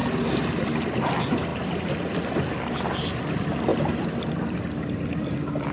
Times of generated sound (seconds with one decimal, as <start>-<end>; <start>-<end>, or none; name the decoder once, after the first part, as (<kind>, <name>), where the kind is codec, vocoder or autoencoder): 3.7-5.2 (vocoder, BigVGAN v2)